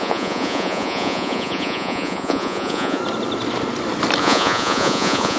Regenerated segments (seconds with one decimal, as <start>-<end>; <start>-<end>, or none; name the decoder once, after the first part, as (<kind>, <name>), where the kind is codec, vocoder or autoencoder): 0.0-3.0 (vocoder, Vocos); 4.2-5.4